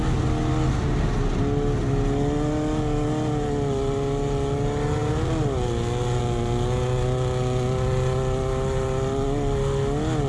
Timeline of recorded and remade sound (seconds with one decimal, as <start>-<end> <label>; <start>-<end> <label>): 0.0-10.3 recorded